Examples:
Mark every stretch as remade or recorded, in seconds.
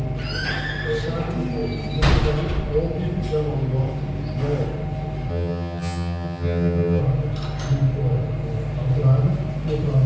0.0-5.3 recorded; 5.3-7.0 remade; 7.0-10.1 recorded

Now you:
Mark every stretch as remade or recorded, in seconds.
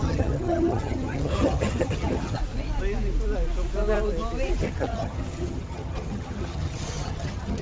0.0-2.4 remade; 2.4-4.6 recorded; 4.6-7.6 remade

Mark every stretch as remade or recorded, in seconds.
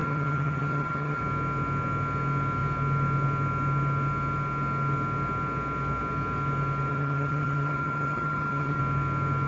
0.0-1.2 remade; 1.2-6.9 recorded; 6.9-8.8 remade; 8.8-9.5 recorded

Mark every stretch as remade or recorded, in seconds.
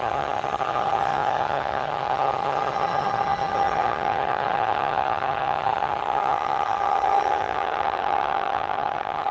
0.0-9.3 remade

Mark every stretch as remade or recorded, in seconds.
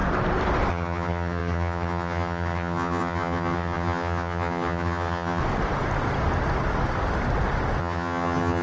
0.0-0.7 recorded; 0.7-5.4 remade; 5.4-7.8 recorded; 7.8-8.6 remade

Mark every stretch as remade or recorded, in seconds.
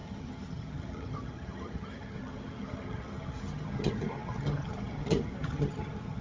0.0-6.2 remade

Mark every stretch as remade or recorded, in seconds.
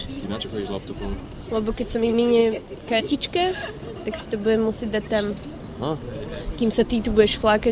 0.0-7.7 recorded